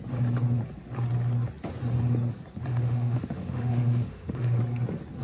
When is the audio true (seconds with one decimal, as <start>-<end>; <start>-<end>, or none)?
0.0-2.7; 4.6-5.2